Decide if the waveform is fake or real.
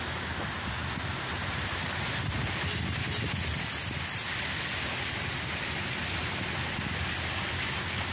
real